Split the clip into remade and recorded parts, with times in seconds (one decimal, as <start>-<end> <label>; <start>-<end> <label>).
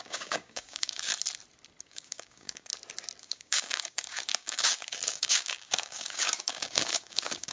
0.0-1.1 remade; 1.1-1.8 recorded; 1.8-2.7 remade; 2.7-3.2 recorded; 3.2-7.5 remade